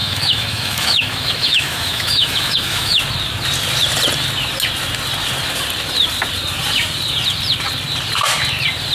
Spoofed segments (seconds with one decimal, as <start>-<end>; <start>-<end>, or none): 0.0-3.0